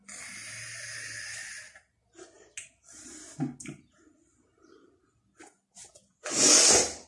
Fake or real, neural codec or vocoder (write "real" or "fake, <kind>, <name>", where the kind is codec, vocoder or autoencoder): real